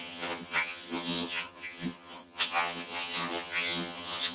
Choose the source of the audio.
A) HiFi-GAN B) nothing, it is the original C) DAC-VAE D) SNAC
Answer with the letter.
A